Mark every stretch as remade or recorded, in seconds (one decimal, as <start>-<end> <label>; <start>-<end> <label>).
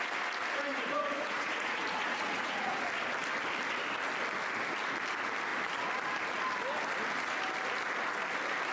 0.0-0.7 recorded; 0.7-2.8 remade; 2.8-8.7 recorded